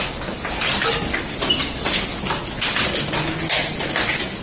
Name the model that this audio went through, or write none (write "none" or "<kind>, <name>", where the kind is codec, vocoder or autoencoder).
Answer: none